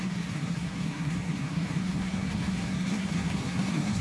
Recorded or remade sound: remade